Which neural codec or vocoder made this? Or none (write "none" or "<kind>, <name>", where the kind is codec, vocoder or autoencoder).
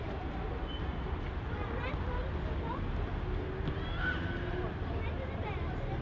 none